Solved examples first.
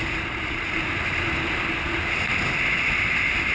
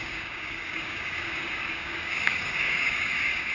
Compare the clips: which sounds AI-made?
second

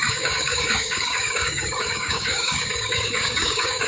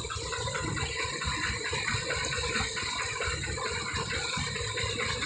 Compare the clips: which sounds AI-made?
first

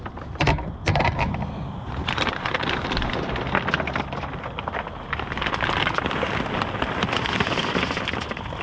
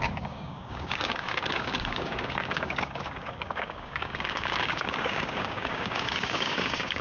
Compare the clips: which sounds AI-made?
second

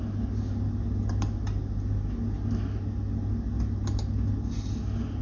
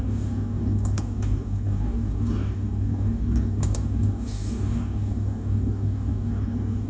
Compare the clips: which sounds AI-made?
second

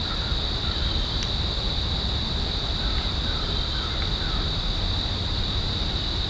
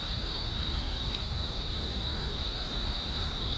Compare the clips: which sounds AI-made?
second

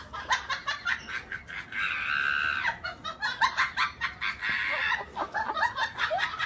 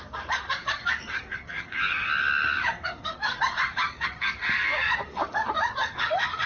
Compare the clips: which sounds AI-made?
second